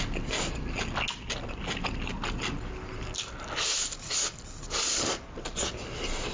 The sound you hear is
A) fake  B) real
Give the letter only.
B